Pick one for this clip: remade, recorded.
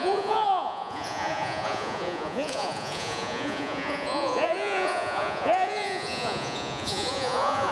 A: remade